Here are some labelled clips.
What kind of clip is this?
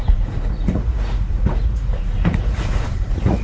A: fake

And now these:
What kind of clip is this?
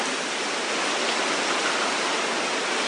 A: real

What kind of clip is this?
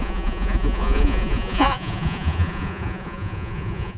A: fake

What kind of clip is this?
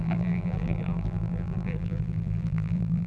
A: fake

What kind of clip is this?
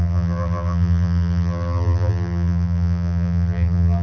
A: fake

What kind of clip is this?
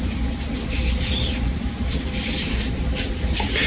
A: real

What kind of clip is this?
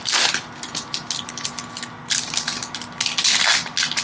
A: real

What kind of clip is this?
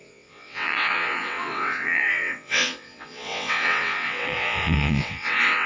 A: fake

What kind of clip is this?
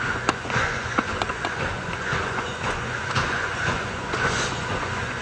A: fake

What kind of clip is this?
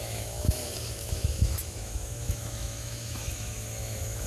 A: fake